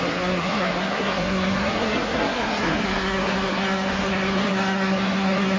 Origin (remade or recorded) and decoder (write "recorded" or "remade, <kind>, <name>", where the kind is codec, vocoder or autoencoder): remade, codec, SNAC